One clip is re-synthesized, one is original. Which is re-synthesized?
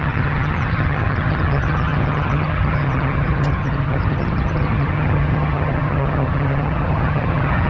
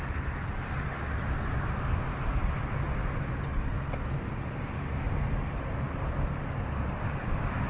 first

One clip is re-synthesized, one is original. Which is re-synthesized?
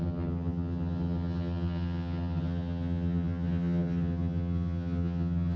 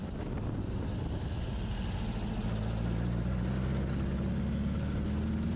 first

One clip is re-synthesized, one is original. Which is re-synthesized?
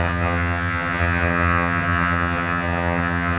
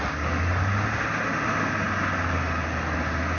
first